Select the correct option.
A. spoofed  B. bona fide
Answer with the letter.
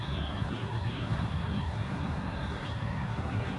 A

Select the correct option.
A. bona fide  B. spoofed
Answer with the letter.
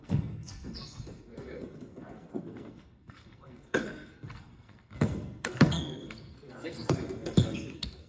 B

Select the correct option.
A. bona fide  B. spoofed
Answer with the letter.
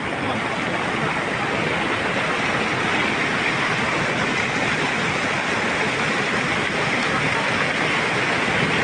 A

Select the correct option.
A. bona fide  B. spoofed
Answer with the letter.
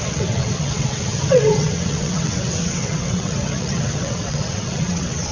B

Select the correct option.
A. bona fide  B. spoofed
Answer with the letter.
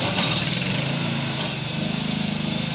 B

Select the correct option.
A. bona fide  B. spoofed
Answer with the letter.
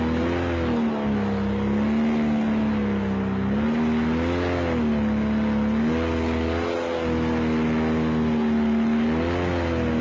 A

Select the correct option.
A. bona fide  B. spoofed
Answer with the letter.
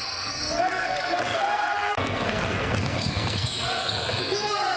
B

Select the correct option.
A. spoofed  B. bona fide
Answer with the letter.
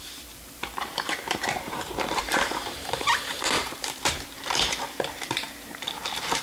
A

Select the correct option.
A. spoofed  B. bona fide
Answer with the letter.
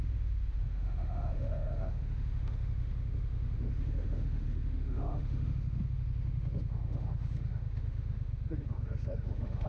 A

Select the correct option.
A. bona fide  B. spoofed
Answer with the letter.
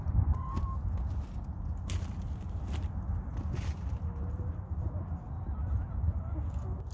A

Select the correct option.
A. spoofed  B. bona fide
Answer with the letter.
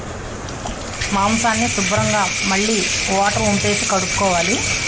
B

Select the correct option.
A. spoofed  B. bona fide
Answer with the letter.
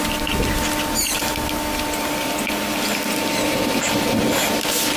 B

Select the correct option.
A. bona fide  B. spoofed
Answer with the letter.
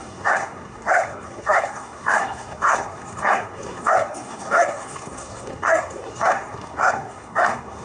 B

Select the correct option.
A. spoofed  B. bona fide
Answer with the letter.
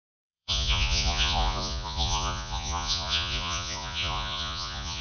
A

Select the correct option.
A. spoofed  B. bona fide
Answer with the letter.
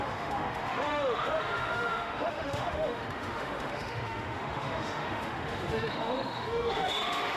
A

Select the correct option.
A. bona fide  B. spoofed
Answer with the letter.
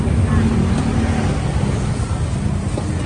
A